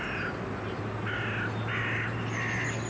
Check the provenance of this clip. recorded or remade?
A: recorded